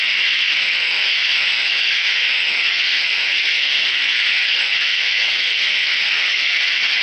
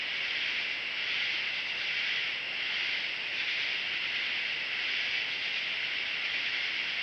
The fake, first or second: first